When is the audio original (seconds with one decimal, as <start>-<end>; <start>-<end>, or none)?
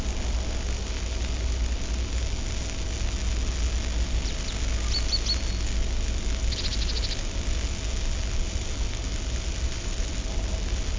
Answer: 0.0-11.0